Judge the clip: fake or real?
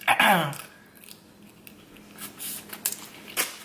real